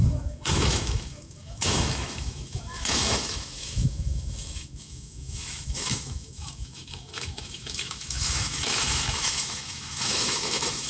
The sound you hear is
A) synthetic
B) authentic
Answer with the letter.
A